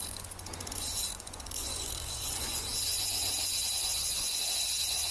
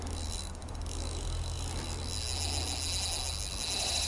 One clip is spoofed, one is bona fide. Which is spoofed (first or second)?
first